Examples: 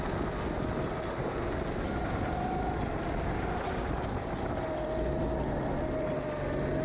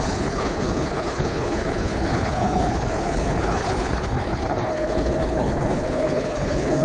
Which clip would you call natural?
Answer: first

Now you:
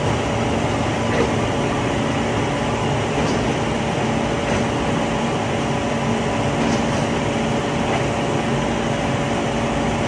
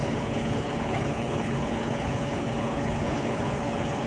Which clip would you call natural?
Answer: first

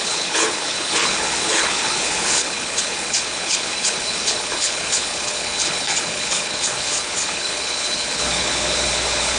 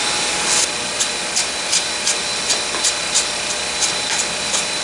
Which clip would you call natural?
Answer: second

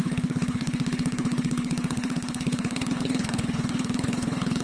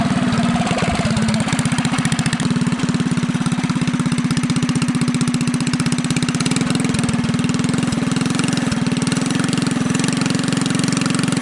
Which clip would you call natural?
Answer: second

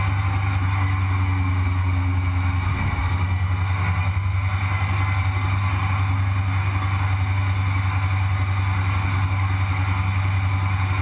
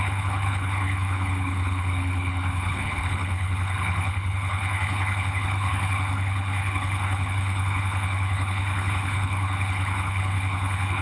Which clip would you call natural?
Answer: first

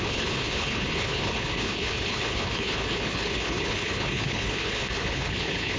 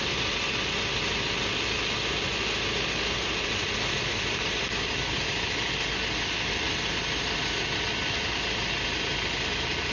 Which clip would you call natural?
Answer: second